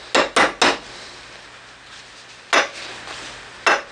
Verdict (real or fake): real